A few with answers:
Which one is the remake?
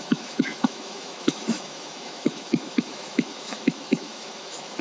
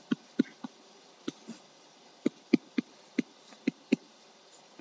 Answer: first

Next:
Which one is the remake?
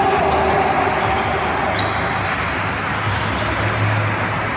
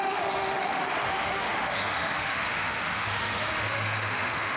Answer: second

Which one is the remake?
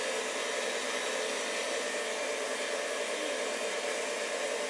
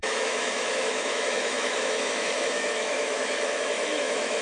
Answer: second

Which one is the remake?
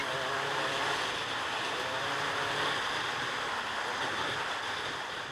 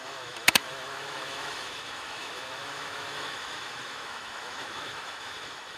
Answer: second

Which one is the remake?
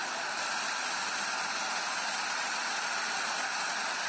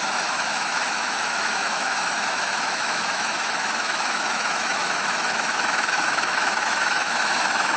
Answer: second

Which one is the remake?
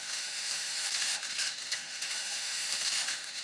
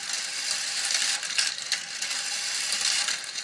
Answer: first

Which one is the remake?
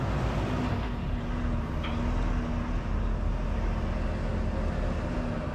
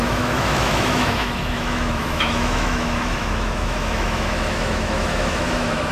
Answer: second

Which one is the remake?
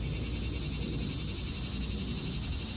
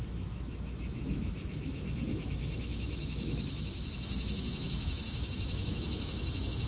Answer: second